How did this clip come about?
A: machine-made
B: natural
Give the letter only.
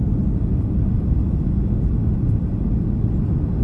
B